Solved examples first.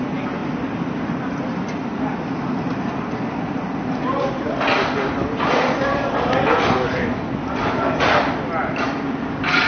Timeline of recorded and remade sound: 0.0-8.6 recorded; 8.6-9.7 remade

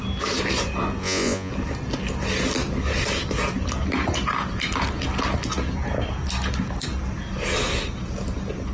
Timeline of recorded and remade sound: 0.0-1.0 recorded; 1.0-1.5 remade; 1.5-8.7 recorded

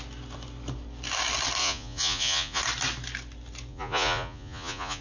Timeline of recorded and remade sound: 0.0-1.6 recorded; 1.6-2.6 remade; 2.6-3.7 recorded; 3.7-5.0 remade

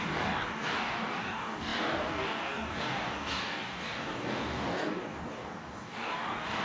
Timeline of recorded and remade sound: 0.0-6.6 remade

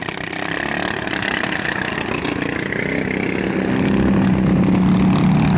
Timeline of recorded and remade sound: 0.0-5.6 recorded

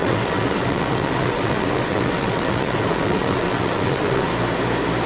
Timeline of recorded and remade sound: 0.0-4.3 remade; 4.3-5.1 recorded